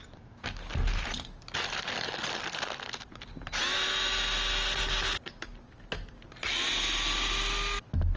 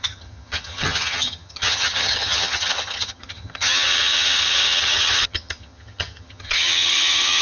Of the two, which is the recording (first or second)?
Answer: first